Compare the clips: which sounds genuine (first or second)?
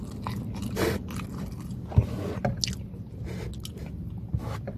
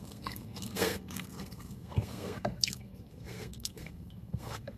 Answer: first